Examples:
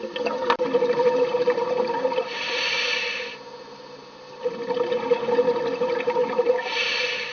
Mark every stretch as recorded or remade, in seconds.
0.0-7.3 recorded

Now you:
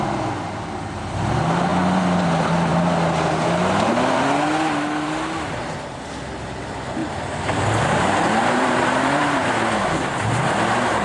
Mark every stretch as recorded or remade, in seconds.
0.0-7.0 recorded; 7.0-9.5 remade; 9.5-11.0 recorded

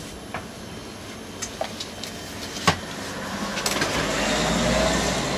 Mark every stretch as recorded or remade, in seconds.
0.0-0.8 remade; 0.8-4.0 recorded; 4.0-4.4 remade; 4.4-5.4 recorded

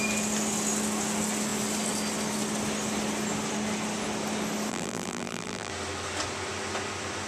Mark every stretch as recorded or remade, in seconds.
0.0-4.7 recorded; 4.7-5.7 remade; 5.7-7.3 recorded

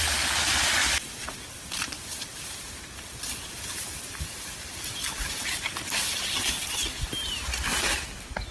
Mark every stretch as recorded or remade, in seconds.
0.0-8.5 recorded